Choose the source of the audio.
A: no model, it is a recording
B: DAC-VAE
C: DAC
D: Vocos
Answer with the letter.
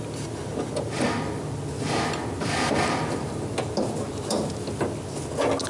A